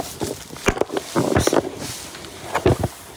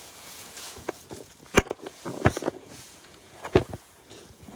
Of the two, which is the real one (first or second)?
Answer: first